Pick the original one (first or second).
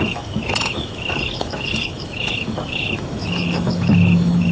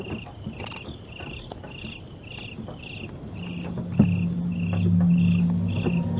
second